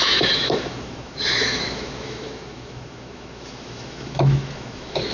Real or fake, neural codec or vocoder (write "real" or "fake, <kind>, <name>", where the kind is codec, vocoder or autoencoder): fake, autoencoder, DAC-VAE